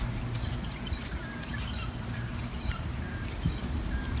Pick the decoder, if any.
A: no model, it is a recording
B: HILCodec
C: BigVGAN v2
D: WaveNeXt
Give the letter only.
C